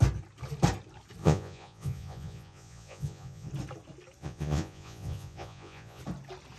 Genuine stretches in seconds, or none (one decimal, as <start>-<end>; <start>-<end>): 0.0-1.2; 3.5-4.2; 6.0-6.6